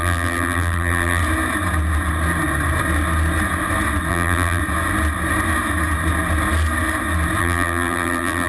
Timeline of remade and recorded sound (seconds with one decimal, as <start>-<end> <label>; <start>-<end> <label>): 0.0-1.2 remade; 1.2-4.1 recorded; 4.1-4.6 remade; 4.6-7.4 recorded; 7.4-8.5 remade